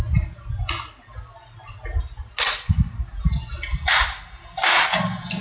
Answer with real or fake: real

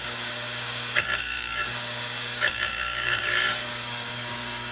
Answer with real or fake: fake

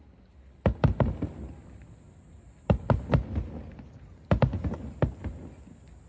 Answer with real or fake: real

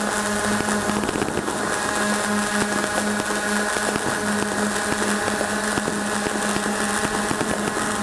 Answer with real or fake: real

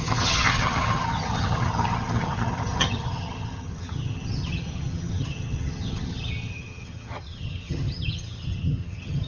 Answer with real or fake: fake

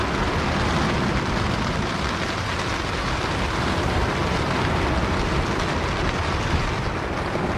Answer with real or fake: real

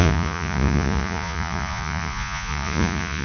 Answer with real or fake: fake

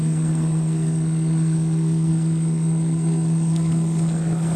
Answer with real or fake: fake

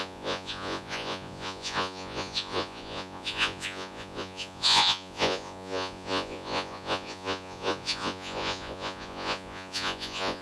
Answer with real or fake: fake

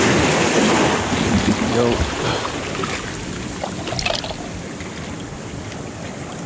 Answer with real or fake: real